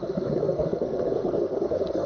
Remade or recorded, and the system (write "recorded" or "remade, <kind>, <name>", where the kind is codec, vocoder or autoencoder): remade, codec, SNAC